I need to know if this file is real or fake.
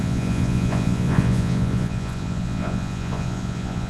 fake